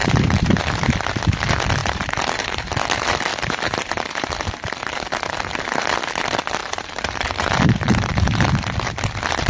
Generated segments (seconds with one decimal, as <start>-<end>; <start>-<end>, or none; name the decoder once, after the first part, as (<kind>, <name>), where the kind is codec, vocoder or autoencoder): 0.0-0.8 (vocoder, BigVGAN v2); 1.8-2.6; 3.3-4.3; 6.6-8.5